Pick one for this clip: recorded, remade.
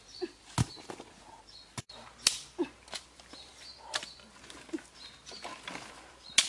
recorded